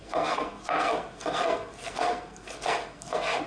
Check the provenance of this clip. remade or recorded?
remade